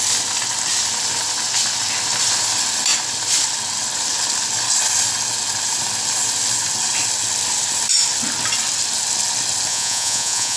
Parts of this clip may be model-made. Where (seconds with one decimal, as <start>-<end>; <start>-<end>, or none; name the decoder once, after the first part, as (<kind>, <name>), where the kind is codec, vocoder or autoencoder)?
9.7-10.6 (vocoder, Vocos)